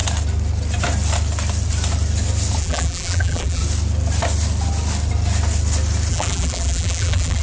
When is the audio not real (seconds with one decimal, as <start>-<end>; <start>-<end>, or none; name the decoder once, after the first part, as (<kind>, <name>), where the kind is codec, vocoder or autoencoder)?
2.6-3.6 (vocoder, BigVGAN v2); 6.1-7.4